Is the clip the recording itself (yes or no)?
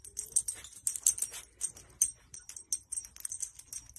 yes